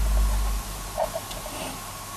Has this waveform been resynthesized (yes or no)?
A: no